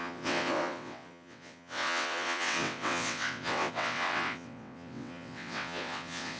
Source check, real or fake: fake